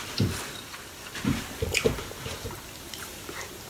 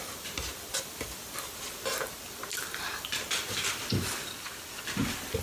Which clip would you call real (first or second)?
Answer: second